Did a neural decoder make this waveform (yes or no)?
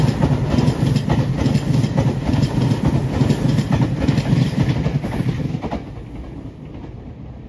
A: no